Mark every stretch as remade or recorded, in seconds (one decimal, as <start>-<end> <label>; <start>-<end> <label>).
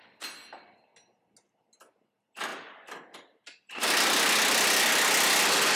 0.0-5.8 recorded